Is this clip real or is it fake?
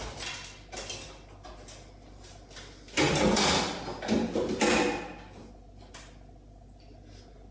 real